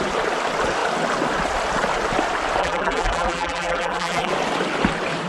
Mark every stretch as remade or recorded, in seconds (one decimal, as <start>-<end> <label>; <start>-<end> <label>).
0.0-2.6 recorded; 2.6-4.3 remade; 4.3-5.3 recorded